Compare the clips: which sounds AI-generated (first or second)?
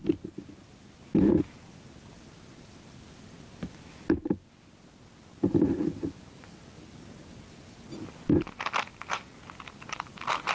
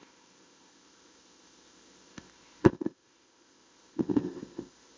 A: second